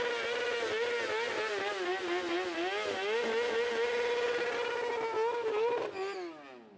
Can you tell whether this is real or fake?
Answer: real